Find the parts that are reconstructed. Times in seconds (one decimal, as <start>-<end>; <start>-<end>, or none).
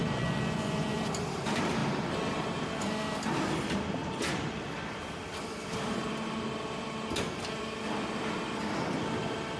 0.0-1.0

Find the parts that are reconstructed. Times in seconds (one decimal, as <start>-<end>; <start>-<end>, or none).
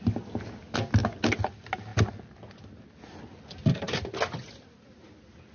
none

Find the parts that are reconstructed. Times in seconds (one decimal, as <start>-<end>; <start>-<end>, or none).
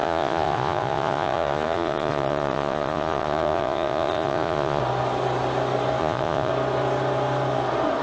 0.0-4.8; 6.0-6.5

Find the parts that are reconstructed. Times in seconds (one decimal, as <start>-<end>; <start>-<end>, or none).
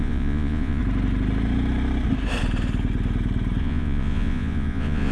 0.0-0.8; 3.6-5.1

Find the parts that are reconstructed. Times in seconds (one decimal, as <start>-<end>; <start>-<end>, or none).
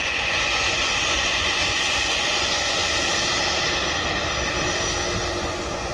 0.0-2.8; 5.3-5.9